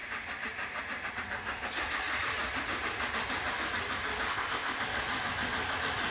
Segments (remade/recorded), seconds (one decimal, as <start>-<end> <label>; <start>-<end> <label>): 0.0-4.3 recorded; 4.3-4.8 remade; 4.8-6.1 recorded